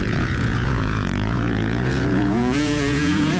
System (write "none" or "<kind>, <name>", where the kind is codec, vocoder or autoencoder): vocoder, Vocos